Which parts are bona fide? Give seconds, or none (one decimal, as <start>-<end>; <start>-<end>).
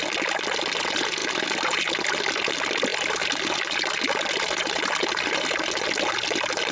0.0-6.7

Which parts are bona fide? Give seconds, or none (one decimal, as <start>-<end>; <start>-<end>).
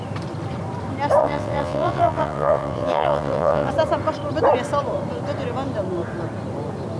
0.0-1.2; 3.7-7.0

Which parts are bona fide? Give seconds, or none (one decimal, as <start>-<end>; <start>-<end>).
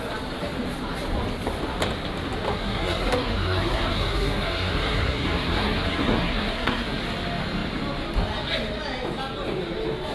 0.0-2.5; 7.0-10.1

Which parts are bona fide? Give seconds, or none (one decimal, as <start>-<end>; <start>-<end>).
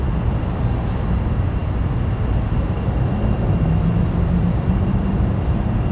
0.0-5.9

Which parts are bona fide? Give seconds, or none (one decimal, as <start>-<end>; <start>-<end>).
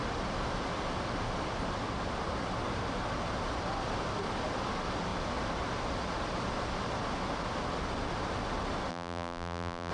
0.0-8.9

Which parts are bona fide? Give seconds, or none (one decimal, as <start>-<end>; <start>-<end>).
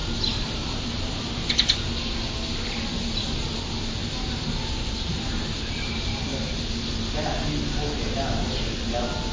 2.0-4.0; 6.7-9.3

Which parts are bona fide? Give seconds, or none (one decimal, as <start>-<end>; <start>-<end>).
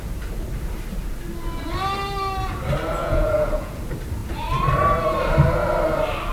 0.0-3.0; 3.8-6.3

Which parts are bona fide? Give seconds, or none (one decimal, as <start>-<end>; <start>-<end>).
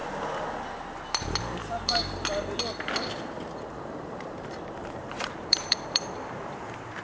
0.0-1.4; 2.0-3.7